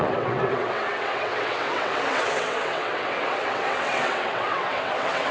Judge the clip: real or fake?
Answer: fake